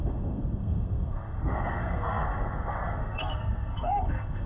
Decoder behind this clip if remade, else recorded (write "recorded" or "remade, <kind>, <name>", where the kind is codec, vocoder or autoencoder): remade, codec, SNAC